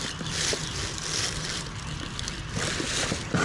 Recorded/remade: recorded